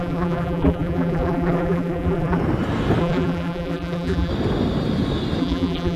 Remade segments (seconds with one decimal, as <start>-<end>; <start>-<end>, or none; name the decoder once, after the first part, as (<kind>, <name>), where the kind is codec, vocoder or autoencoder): 0.0-2.4 (vocoder, BigVGAN v2); 3.0-4.3; 5.4-6.0